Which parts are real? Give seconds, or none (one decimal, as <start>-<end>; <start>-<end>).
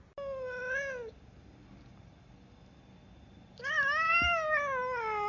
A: 0.0-5.3